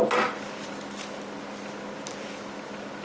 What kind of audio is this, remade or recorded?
recorded